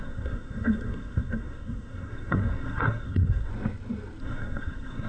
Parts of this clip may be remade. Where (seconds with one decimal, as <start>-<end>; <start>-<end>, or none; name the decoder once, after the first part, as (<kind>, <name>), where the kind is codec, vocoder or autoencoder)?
0.0-3.5 (codec, SNAC); 4.2-5.1